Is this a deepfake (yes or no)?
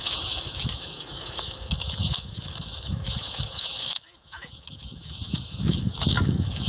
yes